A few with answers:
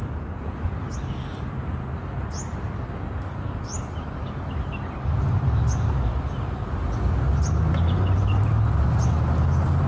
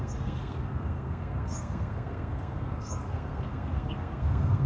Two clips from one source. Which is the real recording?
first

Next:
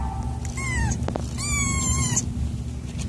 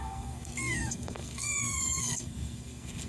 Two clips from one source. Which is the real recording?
first